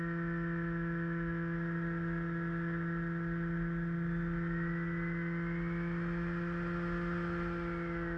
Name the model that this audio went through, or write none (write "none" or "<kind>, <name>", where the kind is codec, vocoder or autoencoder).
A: none